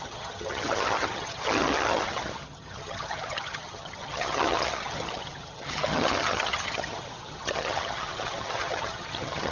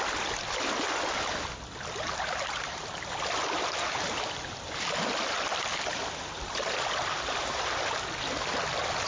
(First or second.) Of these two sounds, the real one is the second